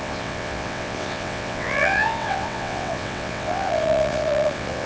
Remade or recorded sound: remade